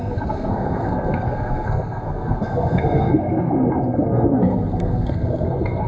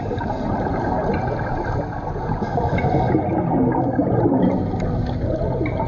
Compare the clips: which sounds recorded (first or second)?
second